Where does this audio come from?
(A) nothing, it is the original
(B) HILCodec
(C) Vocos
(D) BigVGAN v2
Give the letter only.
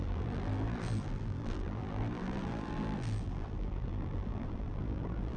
D